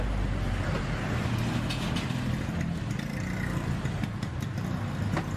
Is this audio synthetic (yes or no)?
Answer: no